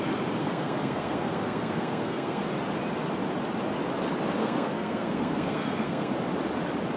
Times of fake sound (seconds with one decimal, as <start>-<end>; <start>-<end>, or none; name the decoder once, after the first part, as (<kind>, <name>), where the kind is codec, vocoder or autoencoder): 0.4-2.4 (codec, SNAC); 4.4-6.1